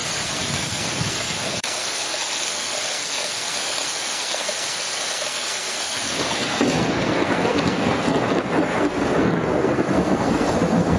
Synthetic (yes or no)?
yes